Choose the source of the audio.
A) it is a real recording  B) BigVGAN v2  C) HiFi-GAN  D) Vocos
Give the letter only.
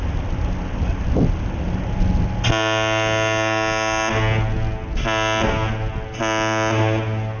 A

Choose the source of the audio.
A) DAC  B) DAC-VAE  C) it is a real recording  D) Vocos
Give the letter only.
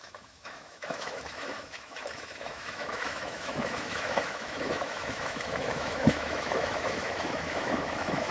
B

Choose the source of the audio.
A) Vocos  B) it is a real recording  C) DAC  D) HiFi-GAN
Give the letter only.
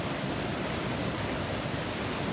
B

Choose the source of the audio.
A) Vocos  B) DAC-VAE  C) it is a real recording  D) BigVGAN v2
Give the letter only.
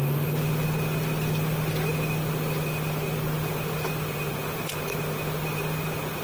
C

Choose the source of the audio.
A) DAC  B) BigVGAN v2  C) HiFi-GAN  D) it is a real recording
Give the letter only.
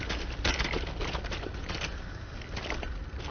D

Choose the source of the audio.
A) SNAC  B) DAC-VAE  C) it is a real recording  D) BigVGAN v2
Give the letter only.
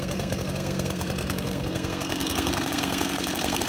A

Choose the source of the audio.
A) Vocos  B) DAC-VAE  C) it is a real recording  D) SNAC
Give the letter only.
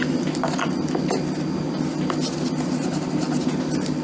C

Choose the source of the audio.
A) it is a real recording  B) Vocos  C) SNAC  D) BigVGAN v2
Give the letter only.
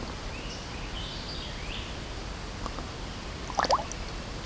A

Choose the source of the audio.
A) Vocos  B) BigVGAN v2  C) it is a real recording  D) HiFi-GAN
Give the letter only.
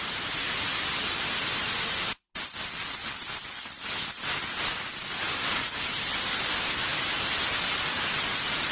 C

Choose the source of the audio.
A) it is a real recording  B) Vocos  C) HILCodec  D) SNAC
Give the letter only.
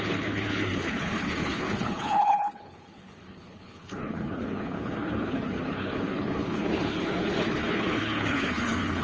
C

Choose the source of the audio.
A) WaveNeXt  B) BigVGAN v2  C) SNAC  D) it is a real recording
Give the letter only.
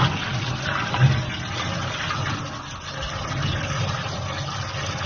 D